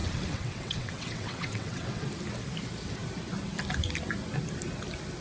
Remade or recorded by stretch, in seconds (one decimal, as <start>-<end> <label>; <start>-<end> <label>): 0.0-2.0 remade; 2.0-5.2 recorded